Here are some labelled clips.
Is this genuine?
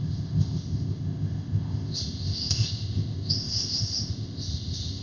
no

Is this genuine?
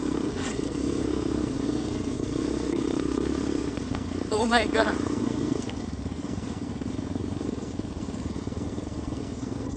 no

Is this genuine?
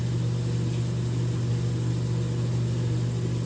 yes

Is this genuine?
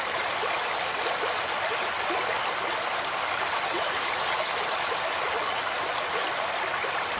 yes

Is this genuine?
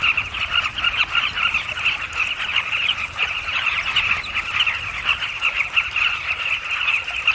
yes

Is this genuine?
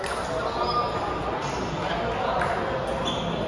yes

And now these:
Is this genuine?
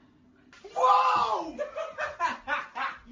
yes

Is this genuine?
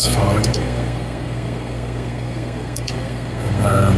no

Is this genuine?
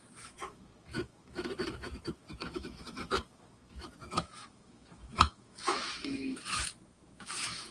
no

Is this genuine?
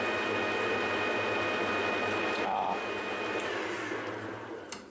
yes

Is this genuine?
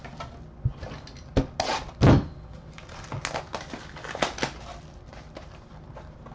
yes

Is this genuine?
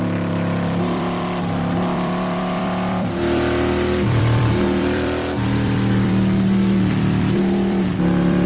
no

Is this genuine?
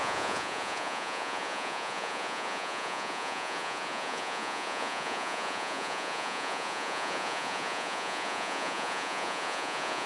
no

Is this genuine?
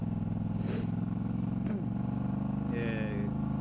yes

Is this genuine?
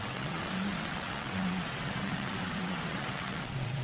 no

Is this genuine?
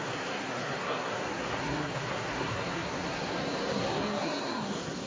no